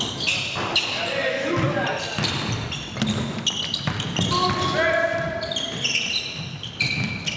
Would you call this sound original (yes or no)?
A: yes